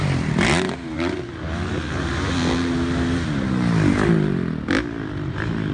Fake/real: real